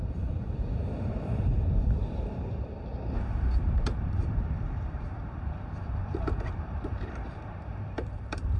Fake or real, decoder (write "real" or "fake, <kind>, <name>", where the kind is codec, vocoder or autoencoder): fake, vocoder, BigVGAN v2